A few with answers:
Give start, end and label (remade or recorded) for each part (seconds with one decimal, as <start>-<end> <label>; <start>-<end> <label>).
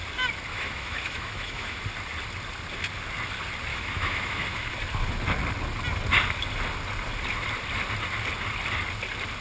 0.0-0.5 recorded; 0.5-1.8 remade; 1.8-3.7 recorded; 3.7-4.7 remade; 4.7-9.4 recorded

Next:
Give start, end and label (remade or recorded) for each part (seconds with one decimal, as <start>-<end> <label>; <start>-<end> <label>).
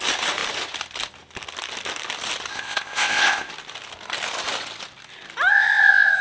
0.0-2.5 recorded; 2.5-3.5 remade; 3.5-5.5 recorded; 5.5-6.2 remade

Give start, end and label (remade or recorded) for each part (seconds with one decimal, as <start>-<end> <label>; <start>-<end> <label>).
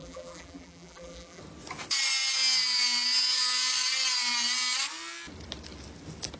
0.0-1.4 remade; 1.4-6.4 recorded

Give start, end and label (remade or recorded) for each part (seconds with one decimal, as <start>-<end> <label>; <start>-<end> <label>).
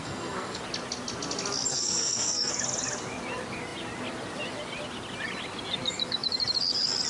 0.0-0.6 remade; 0.6-1.7 recorded; 1.7-2.5 remade; 2.5-7.1 recorded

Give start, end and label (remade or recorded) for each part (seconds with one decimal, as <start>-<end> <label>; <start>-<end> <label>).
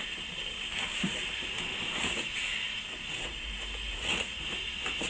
0.0-1.7 recorded; 1.7-3.5 remade; 3.5-3.9 recorded; 3.9-4.4 remade; 4.4-5.1 recorded